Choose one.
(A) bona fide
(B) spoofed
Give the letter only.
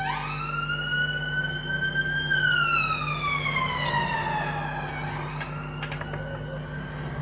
A